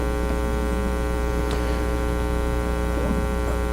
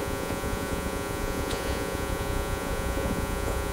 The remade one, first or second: second